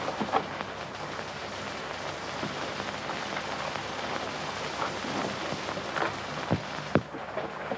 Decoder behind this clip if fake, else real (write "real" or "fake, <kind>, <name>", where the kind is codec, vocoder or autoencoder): real